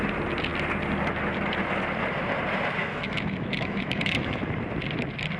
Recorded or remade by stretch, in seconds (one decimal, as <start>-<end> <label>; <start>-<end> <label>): 0.0-2.8 recorded; 2.8-4.4 remade; 4.4-5.4 recorded

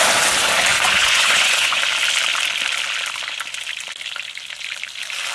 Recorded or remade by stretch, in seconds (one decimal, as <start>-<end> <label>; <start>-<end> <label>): 0.0-0.7 recorded; 0.7-1.8 remade; 1.8-5.3 recorded